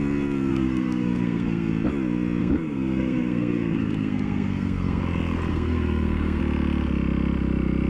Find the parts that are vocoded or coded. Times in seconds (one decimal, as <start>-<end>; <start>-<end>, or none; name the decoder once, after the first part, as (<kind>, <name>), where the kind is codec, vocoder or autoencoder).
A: 0.5-1.7 (codec, SNAC); 2.4-5.0; 5.5-6.4